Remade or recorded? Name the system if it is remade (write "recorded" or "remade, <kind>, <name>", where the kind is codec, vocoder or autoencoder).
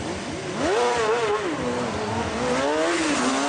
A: recorded